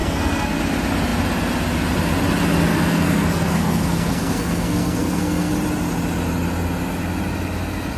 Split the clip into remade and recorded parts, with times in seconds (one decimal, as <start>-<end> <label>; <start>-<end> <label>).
0.0-0.6 remade; 0.6-2.7 recorded; 2.7-5.5 remade; 5.5-8.0 recorded